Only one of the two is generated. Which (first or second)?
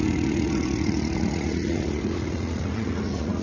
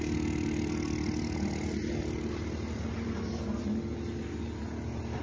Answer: first